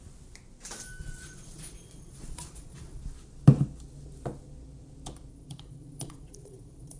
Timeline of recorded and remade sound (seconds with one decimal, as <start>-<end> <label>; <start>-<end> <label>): 0.0-1.0 recorded; 1.0-3.0 remade; 3.0-5.3 recorded; 5.3-7.0 remade